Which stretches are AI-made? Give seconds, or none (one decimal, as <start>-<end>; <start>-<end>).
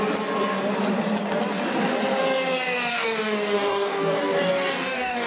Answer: 2.9-5.3